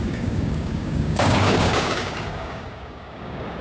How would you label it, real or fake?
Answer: fake